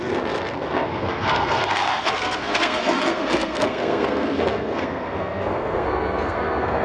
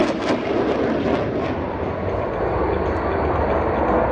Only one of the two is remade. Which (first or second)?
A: first